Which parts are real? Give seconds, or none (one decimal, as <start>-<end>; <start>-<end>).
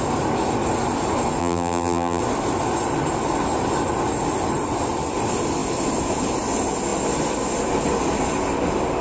0.0-1.4; 2.2-9.0